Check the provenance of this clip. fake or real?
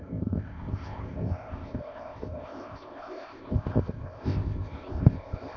fake